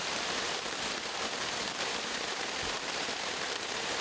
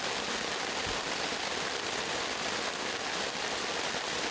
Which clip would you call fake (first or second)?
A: first